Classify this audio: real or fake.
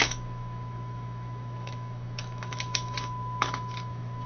fake